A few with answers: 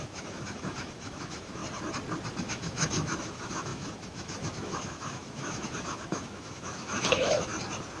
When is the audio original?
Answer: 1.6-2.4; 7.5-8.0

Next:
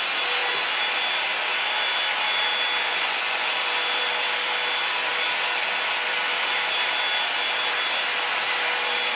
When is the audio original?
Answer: 0.0-2.8; 3.5-9.2

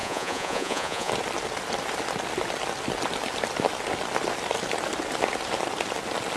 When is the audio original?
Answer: 1.1-6.4